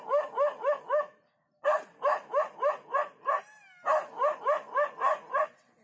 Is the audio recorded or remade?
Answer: recorded